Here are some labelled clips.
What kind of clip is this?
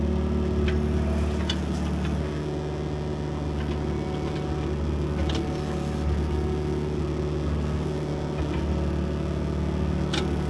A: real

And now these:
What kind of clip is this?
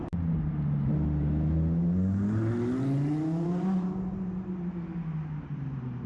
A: real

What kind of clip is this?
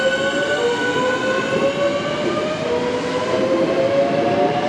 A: real